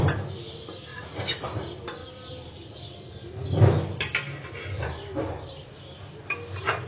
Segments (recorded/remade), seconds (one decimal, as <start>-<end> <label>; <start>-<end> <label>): 0.0-0.9 remade; 0.9-1.6 recorded; 1.6-2.0 remade; 2.0-6.1 recorded; 6.1-6.9 remade